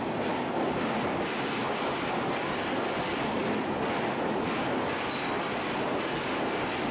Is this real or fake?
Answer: real